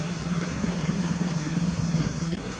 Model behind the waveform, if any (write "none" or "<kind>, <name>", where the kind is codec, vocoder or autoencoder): codec, SNAC